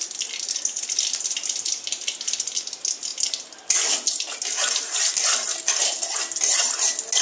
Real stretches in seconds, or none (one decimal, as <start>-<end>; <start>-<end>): 0.0-7.2